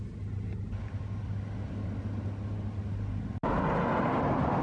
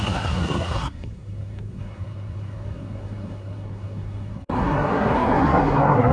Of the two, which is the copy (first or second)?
second